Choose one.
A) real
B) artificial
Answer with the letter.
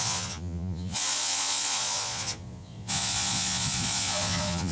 B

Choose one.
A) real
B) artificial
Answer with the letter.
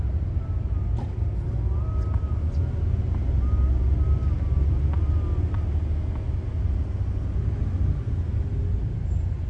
A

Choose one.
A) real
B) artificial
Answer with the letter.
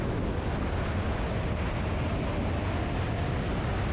A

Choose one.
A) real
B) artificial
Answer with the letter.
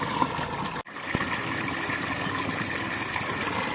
A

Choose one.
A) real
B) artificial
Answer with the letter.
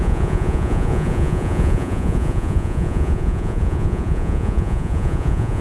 B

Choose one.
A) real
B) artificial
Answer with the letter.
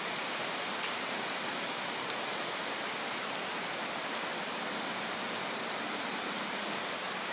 A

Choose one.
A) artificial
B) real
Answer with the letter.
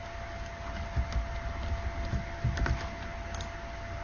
B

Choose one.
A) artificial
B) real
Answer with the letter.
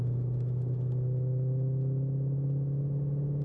B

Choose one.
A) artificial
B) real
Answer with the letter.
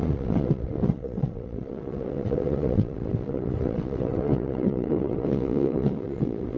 A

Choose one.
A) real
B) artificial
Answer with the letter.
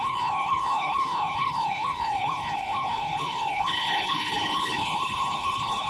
B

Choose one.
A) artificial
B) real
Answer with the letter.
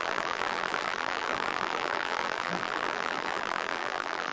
A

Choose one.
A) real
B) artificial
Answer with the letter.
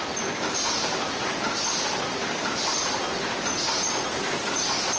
A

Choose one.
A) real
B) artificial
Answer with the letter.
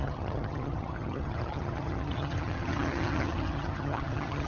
B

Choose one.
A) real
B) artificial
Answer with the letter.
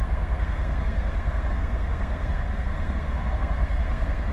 B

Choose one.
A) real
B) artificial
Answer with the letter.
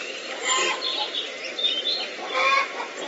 B